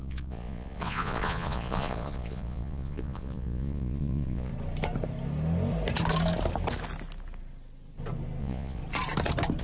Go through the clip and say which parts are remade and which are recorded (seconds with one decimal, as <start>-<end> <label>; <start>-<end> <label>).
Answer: 0.0-4.5 remade; 4.5-8.4 recorded; 8.4-8.8 remade; 8.8-9.6 recorded

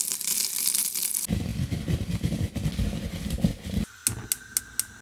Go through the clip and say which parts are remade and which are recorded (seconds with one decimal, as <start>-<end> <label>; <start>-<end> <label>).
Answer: 0.0-5.0 recorded

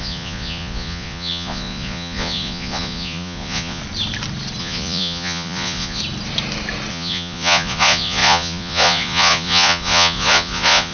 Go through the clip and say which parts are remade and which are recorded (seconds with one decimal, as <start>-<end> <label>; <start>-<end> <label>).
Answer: 0.0-3.8 remade; 3.8-4.6 recorded; 4.6-6.0 remade; 6.0-6.9 recorded; 6.9-10.9 remade